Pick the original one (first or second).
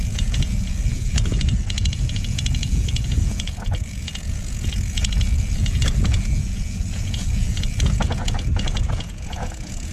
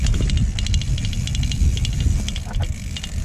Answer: second